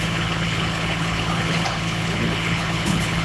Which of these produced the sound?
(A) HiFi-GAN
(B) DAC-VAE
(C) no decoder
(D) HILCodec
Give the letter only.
D